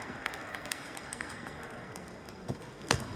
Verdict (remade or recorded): remade